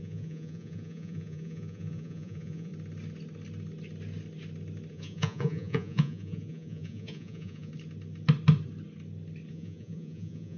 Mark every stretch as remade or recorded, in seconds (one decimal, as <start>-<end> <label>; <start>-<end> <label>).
0.0-2.7 remade; 2.7-4.9 recorded; 4.9-7.7 remade; 7.7-9.5 recorded; 9.5-10.6 remade